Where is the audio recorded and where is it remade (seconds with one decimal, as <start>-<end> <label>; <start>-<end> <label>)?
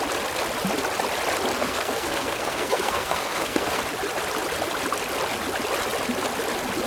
0.0-1.5 recorded; 1.5-3.8 remade; 3.8-6.9 recorded